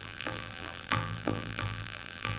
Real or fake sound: fake